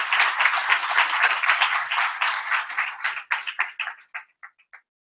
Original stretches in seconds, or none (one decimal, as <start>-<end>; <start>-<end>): 0.0-5.1